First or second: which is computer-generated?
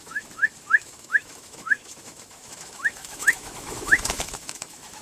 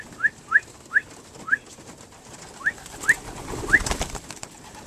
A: first